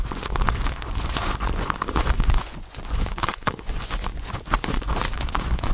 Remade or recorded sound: remade